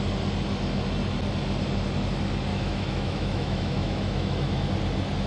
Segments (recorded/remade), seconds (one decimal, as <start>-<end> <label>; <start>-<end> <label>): 0.0-2.5 recorded; 2.5-4.7 remade; 4.7-5.3 recorded